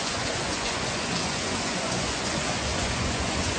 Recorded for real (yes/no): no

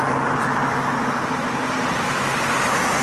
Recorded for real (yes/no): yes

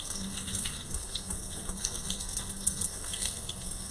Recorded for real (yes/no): no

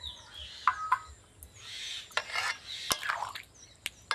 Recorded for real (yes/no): yes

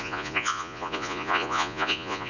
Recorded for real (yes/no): no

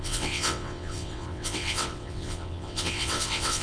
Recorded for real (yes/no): no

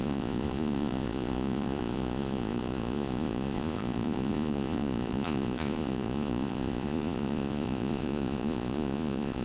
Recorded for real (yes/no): no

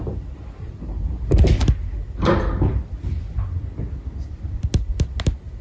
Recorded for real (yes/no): yes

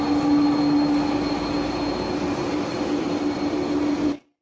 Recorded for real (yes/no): yes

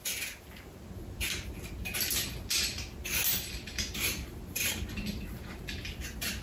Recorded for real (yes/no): yes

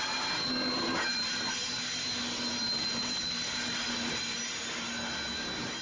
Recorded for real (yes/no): yes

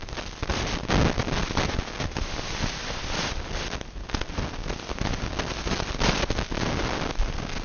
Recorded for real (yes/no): yes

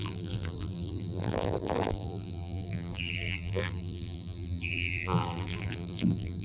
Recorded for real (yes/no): no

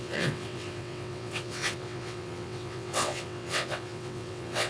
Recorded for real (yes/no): no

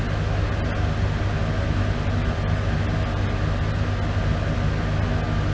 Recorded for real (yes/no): yes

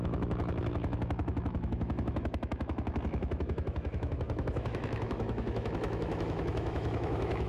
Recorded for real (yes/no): no